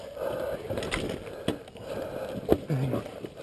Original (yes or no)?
yes